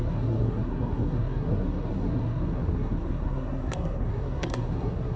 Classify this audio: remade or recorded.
remade